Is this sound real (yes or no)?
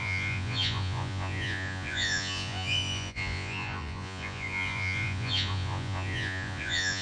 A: no